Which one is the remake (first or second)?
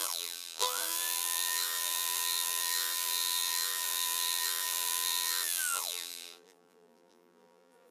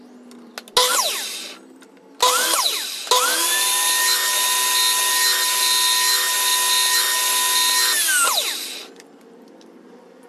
first